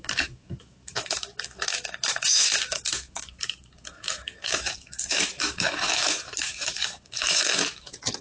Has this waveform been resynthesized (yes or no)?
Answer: yes